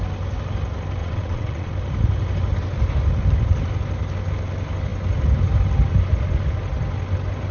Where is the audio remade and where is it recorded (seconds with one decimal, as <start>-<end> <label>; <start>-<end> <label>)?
0.0-1.0 recorded; 1.0-1.7 remade; 1.7-7.5 recorded